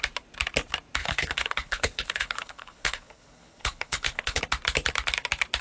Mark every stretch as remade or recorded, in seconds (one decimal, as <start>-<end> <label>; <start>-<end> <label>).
0.0-1.0 recorded; 1.0-4.4 remade; 4.4-5.6 recorded